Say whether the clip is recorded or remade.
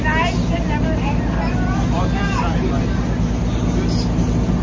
recorded